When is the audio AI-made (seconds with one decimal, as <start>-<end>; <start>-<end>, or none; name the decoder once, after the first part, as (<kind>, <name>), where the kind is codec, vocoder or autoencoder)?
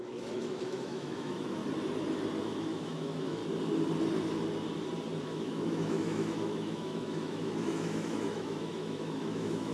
0.0-1.6 (autoencoder, DAC-VAE); 2.4-3.4; 5.2-9.7